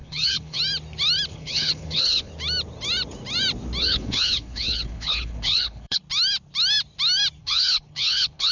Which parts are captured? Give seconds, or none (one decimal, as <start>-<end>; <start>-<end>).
0.6-1.3; 2.3-3.8; 6.0-7.4